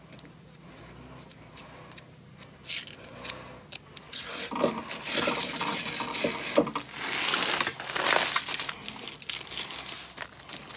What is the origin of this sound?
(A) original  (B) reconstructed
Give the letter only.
A